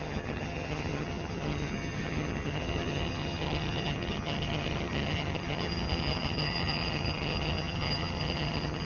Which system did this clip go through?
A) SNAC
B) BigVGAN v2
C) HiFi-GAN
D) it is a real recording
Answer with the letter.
C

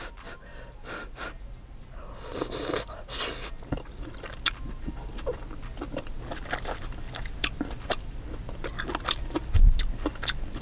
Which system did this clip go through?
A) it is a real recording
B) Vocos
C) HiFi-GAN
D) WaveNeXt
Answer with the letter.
A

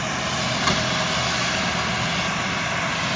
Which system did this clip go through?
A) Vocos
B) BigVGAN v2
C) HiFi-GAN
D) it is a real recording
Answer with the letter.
D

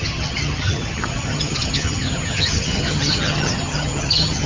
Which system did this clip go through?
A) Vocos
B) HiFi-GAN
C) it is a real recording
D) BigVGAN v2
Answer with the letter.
B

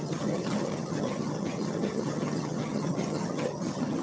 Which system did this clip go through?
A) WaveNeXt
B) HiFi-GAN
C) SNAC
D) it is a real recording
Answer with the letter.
B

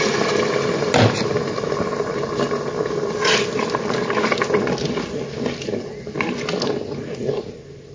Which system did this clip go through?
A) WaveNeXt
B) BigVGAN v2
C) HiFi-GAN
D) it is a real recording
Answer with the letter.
D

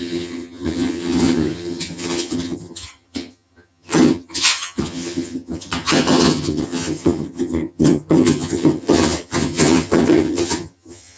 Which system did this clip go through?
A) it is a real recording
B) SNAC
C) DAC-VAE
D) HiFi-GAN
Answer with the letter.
D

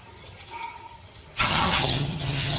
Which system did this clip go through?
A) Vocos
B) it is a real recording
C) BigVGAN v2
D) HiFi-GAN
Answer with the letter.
D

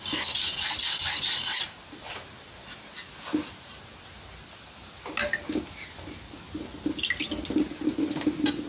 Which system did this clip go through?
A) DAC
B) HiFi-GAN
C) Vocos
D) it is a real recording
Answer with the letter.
D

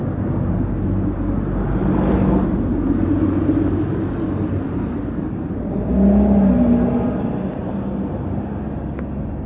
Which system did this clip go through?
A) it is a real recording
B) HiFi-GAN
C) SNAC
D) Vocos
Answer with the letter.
A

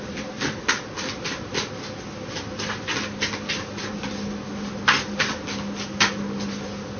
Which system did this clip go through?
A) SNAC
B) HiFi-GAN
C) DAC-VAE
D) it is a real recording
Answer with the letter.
D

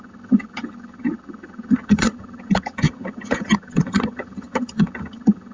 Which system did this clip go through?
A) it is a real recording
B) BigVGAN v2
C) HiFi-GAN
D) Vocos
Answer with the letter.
C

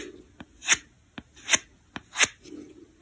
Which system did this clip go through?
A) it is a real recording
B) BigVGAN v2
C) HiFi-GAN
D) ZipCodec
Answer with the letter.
A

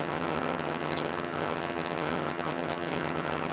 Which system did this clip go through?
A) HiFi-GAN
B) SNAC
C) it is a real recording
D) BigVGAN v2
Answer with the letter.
A